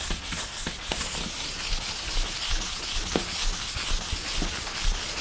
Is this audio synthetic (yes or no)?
no